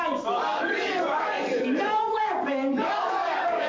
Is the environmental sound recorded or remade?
remade